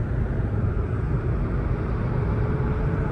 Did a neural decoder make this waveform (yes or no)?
no